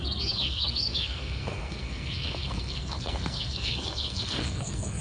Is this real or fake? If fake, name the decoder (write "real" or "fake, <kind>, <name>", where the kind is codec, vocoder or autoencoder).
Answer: fake, codec, SNAC